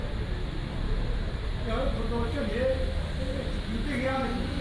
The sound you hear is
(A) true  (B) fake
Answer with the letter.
A